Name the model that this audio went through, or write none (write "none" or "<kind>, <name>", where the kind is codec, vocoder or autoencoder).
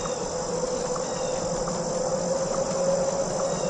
none